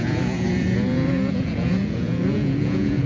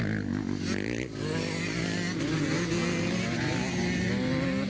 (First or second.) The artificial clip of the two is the first